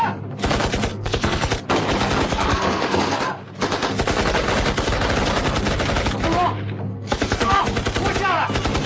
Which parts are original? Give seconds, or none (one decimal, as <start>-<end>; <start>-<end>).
0.0-0.9; 1.5-2.3; 3.2-6.9; 7.6-8.9